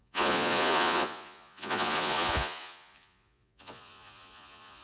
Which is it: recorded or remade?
remade